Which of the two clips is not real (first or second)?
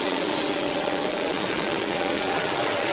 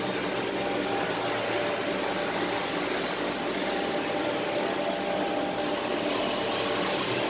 first